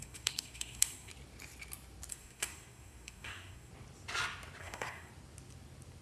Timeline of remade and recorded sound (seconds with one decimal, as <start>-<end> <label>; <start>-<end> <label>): 0.0-1.1 remade; 1.1-2.1 recorded; 2.1-3.7 remade; 3.7-4.6 recorded; 4.6-5.1 remade; 5.1-6.0 recorded